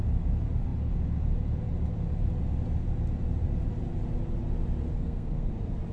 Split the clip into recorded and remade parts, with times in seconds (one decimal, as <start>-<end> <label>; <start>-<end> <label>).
0.0-4.9 recorded; 4.9-5.5 remade; 5.5-5.9 recorded